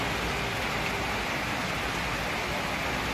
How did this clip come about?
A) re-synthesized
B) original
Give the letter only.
B